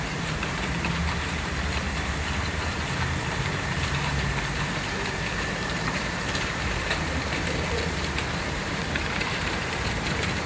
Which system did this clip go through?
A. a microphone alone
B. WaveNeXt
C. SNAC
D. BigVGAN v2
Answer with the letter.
D